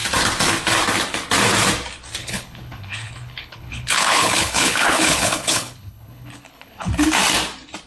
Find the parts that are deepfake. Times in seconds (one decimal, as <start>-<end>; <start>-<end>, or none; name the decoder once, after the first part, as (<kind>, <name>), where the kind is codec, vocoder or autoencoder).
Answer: 2.2-6.9 (codec, HILCodec)